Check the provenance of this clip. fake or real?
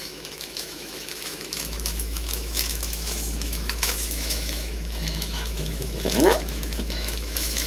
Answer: fake